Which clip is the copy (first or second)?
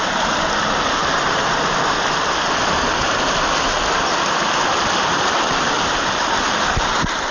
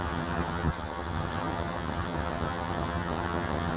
second